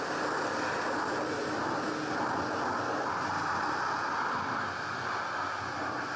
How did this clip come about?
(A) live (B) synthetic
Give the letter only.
A